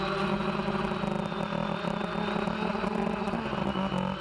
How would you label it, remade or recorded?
recorded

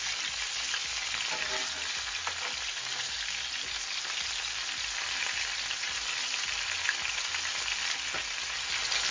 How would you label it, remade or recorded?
recorded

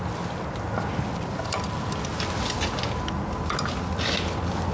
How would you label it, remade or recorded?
recorded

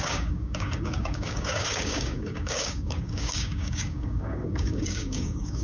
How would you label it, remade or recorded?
remade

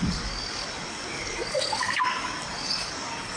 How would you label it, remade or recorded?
remade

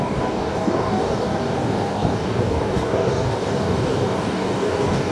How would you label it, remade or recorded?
remade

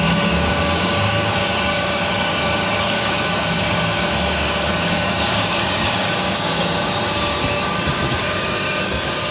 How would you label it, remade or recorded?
remade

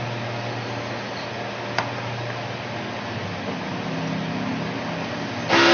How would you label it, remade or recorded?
recorded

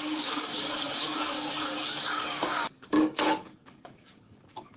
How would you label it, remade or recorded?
remade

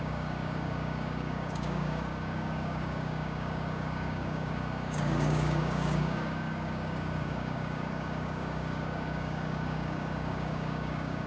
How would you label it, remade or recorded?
remade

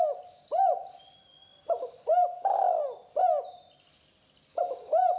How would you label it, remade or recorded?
recorded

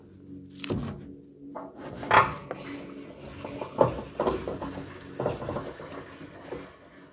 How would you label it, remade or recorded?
recorded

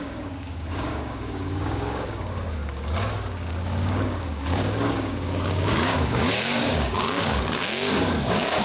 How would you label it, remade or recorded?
remade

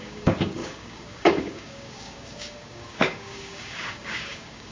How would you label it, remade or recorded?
remade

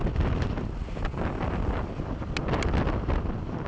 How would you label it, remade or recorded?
recorded